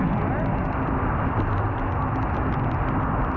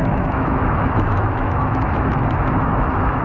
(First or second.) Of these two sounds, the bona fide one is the first